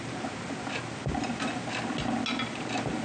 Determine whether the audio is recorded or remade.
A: recorded